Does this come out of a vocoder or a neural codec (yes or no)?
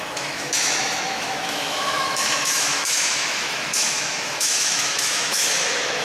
yes